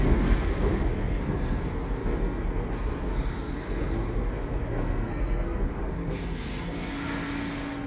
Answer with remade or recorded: remade